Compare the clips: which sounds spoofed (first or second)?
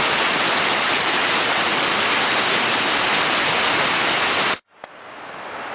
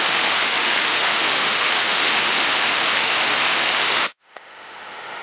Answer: second